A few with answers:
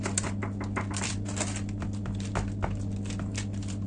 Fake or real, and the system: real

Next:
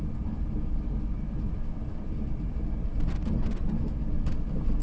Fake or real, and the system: real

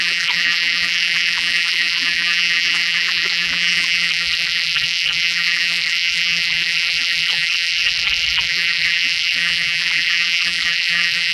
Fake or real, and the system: fake, vocoder, BigVGAN v2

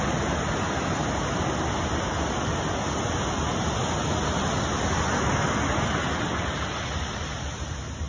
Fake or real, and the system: real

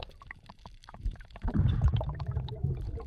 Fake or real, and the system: fake, vocoder, BigVGAN v2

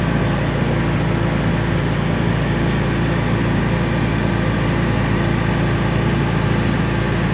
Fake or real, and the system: real